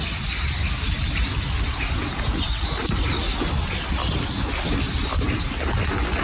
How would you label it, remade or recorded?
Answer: recorded